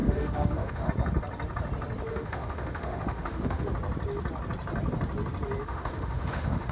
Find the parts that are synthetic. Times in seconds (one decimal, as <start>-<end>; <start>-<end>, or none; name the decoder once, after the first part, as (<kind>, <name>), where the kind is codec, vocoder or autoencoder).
0.0-0.9 (autoencoder, DAC-VAE); 2.1-3.7; 5.6-6.7